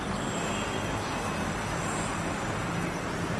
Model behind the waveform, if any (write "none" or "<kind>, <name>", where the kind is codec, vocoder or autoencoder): none